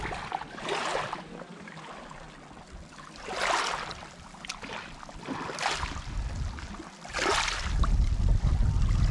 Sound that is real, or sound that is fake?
real